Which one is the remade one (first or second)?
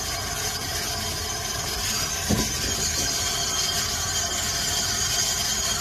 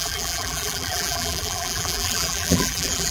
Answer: second